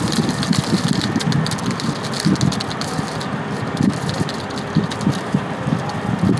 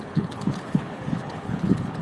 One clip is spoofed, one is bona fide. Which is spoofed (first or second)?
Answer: second